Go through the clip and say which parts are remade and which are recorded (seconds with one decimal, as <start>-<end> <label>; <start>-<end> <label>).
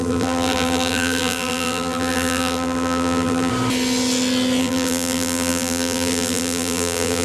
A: 0.0-3.5 remade; 3.5-4.6 recorded; 4.6-7.2 remade